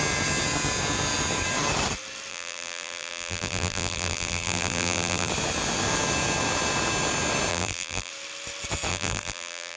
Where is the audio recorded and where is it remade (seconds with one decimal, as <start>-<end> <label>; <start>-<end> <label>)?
0.0-2.3 recorded; 2.3-5.3 remade; 5.3-7.5 recorded; 7.5-8.1 remade; 8.1-8.9 recorded; 8.9-9.8 remade